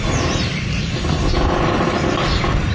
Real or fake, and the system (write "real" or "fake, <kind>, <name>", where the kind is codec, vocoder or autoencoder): real